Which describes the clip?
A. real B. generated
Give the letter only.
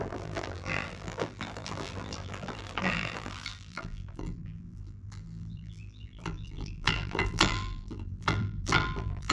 B